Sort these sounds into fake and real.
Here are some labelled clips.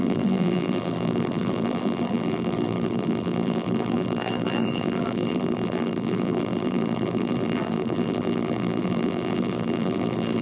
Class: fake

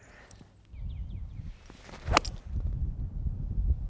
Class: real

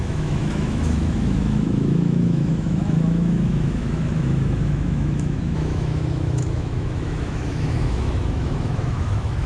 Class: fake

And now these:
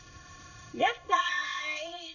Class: fake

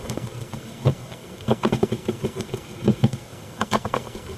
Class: fake